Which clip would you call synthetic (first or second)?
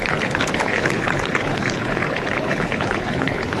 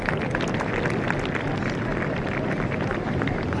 first